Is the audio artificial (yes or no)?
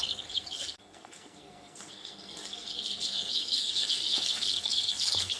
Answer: yes